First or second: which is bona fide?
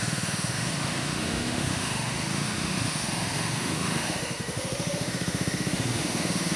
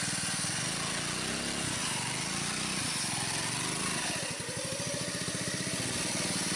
second